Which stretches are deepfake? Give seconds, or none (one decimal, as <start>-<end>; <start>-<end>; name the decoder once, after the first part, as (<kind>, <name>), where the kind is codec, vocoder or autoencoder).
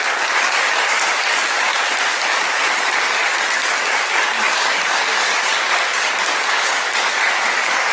0.0-1.7 (codec, DAC); 2.7-7.9